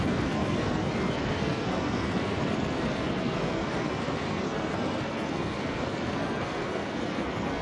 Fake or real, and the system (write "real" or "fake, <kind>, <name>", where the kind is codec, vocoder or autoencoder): fake, codec, SNAC